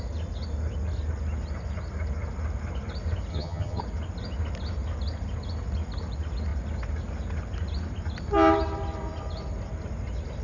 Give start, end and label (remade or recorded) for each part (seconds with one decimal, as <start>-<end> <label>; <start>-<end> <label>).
0.0-3.3 recorded; 3.3-3.8 remade; 3.8-10.4 recorded